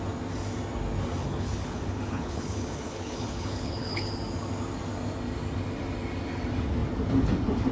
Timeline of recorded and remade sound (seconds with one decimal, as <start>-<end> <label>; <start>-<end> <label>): 0.0-1.2 recorded; 1.2-4.1 remade; 4.1-7.7 recorded